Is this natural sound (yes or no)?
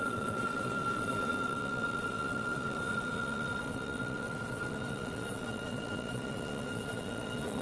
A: no